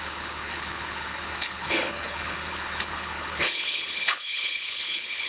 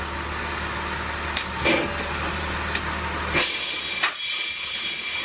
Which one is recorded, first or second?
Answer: second